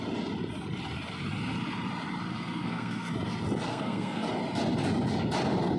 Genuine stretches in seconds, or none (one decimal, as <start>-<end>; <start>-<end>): 0.0-2.3; 3.1-3.7; 4.3-5.8